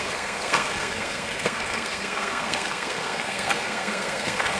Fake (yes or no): yes